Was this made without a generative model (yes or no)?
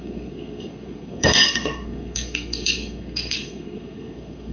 no